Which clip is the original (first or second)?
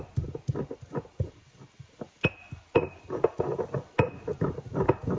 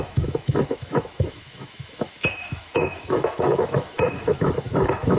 first